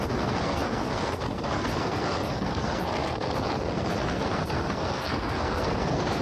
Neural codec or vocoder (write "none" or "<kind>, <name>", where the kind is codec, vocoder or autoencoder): codec, SNAC